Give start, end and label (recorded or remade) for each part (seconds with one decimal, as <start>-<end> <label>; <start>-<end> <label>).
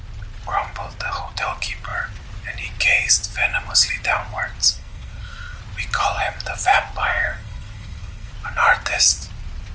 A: 0.0-4.7 recorded; 4.7-5.6 remade; 5.6-7.1 recorded; 7.1-8.3 remade; 8.3-9.7 recorded